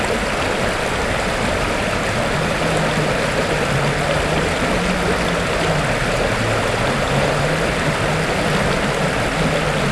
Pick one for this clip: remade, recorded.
recorded